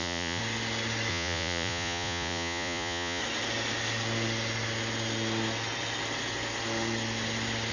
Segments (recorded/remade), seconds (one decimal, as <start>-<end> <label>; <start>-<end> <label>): 0.0-0.4 remade; 0.4-1.1 recorded; 1.1-3.2 remade; 3.2-7.7 recorded